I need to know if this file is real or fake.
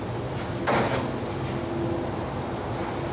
real